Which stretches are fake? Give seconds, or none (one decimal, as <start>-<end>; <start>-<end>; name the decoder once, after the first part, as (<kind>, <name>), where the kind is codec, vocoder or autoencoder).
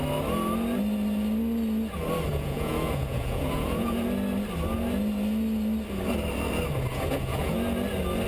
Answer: 2.3-4.0 (vocoder, Vocos); 6.9-7.5